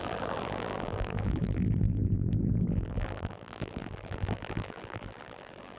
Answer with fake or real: fake